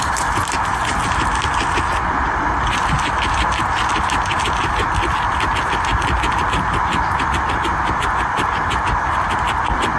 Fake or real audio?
real